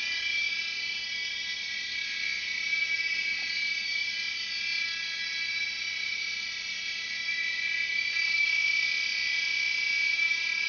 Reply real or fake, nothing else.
real